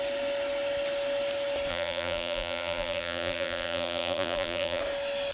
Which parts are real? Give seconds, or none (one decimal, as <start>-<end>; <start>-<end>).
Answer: 0.0-1.7; 4.8-5.3